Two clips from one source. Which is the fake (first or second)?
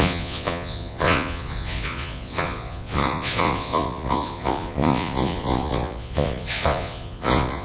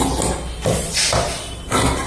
first